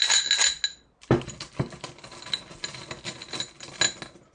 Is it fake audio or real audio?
real